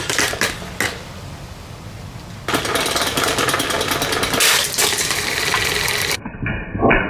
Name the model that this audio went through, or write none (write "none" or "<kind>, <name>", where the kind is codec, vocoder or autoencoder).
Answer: none